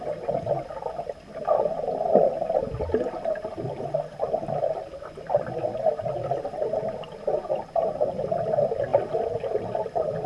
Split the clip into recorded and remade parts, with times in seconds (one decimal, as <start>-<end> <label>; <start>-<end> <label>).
0.0-10.3 recorded